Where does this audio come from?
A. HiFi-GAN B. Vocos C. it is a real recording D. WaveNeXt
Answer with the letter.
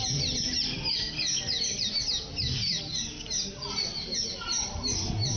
C